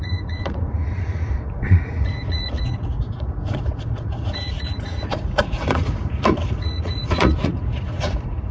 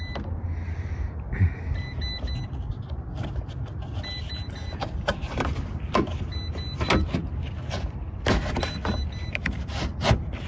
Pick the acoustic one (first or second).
second